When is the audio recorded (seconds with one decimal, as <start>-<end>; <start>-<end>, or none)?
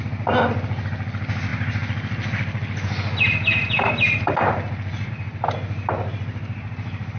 0.0-7.2